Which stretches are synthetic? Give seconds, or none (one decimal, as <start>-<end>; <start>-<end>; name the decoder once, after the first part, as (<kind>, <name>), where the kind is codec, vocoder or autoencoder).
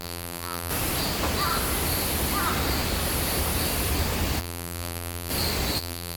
0.0-0.7 (vocoder, BigVGAN v2); 4.4-5.3; 5.8-6.2